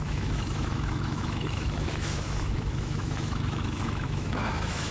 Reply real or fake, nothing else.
fake